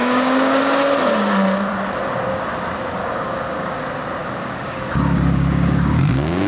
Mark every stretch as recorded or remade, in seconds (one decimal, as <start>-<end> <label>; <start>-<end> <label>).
0.0-0.6 remade; 0.6-3.0 recorded; 3.0-3.8 remade; 3.8-4.2 recorded; 4.2-6.5 remade